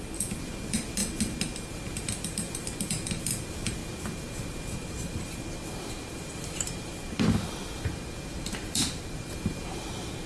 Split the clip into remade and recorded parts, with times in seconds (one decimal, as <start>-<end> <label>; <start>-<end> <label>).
0.0-1.0 remade; 1.0-1.7 recorded; 1.7-10.3 remade